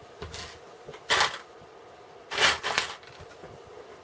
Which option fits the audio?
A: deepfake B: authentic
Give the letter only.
B